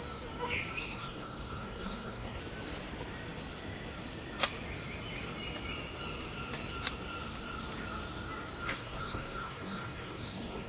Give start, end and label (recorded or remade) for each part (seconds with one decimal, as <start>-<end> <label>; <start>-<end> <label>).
0.0-0.8 recorded; 0.8-2.4 remade; 2.4-8.7 recorded; 8.7-10.7 remade